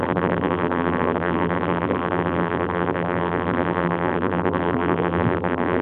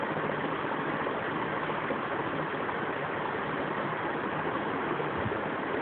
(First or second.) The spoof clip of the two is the first